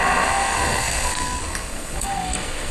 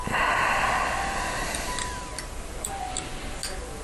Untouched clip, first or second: second